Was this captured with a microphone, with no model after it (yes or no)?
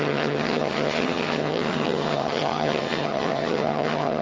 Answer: no